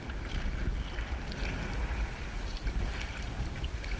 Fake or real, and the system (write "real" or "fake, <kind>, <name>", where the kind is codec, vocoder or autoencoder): real